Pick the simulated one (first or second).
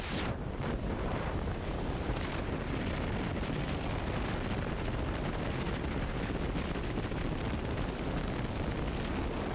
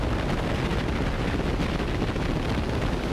first